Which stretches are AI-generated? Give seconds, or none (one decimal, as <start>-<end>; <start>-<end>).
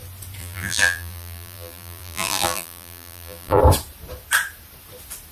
0.4-3.6